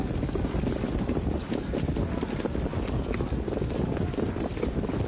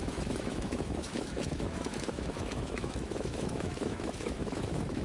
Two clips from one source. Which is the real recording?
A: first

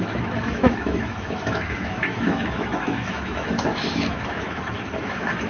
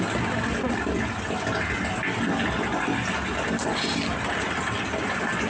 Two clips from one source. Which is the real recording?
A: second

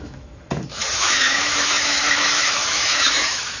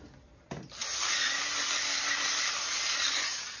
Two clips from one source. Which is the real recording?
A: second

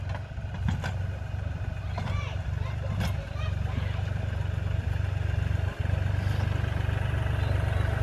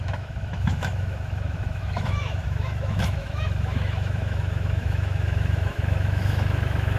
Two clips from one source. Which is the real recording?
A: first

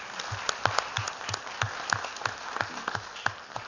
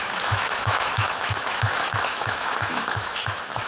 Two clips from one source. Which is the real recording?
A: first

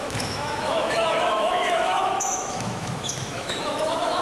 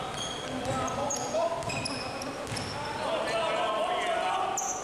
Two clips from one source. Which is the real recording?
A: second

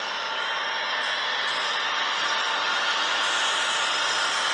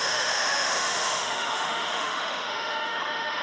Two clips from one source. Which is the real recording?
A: first